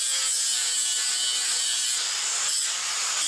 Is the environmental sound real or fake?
real